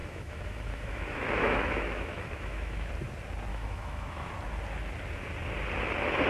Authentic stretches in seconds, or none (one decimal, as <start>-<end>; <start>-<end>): 2.9-3.5; 4.3-6.3